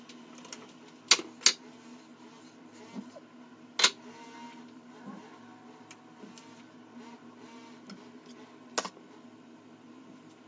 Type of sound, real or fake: real